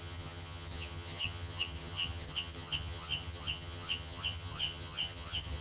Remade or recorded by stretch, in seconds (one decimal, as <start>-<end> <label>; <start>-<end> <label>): 0.0-5.6 remade